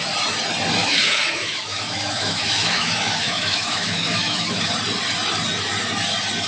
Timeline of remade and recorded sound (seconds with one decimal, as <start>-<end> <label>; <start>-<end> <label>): 0.0-0.8 recorded; 0.8-4.7 remade; 4.7-6.5 recorded